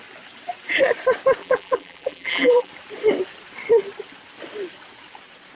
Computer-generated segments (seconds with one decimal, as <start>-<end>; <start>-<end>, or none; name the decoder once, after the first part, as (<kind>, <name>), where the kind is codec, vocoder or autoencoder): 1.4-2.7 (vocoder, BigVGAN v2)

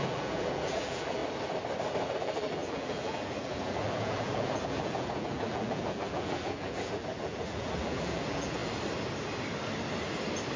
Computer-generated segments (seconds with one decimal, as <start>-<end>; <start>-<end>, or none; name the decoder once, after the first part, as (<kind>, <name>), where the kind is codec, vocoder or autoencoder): 0.0-1.2 (vocoder, BigVGAN v2); 2.2-8.6

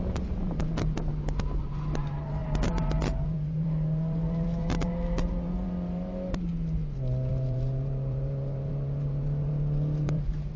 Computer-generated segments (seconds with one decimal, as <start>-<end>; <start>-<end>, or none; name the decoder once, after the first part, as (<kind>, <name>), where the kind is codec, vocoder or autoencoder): 0.0-1.1 (vocoder, BigVGAN v2); 1.6-6.5; 7.3-10.6